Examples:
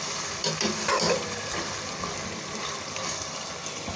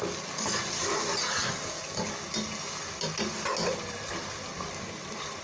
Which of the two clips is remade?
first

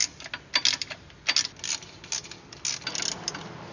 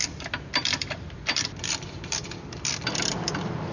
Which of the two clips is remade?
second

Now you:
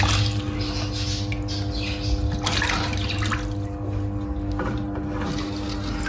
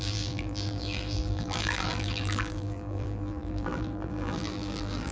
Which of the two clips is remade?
second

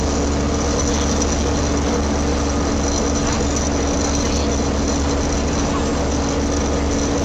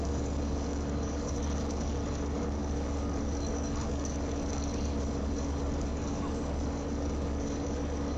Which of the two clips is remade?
second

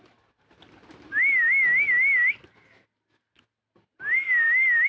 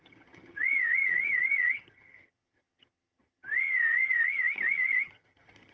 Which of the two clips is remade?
second